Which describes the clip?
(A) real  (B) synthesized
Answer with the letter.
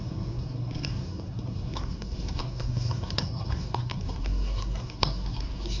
B